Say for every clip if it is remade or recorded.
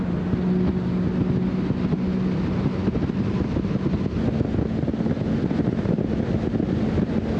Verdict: recorded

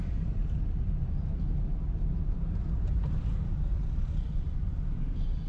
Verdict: remade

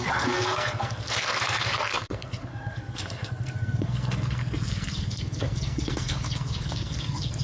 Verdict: remade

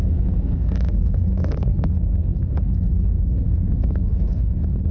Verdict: remade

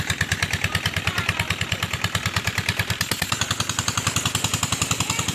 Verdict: remade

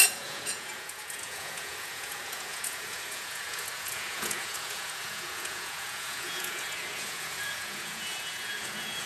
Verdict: remade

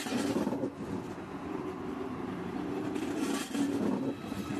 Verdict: recorded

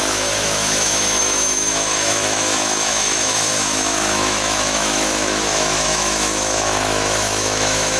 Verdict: remade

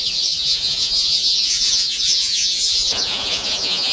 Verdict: remade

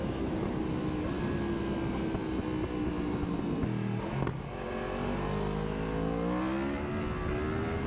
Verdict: recorded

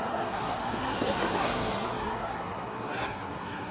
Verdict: remade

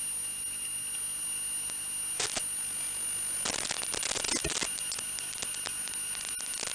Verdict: recorded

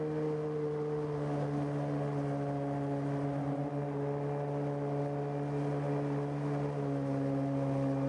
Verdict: recorded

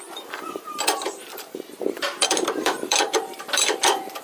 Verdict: remade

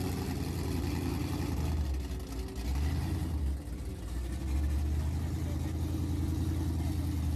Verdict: recorded